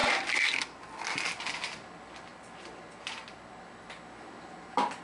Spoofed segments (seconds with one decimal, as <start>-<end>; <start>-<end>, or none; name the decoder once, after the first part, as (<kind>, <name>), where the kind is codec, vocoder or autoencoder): 0.0-0.6 (vocoder, BigVGAN v2); 2.3-3.5